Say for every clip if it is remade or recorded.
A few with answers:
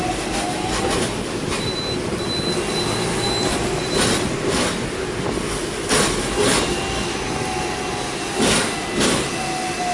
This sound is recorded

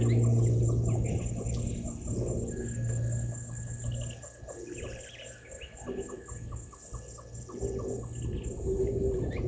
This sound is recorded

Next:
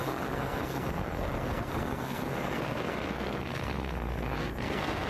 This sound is remade